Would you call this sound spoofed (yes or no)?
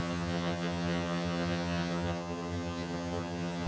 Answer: yes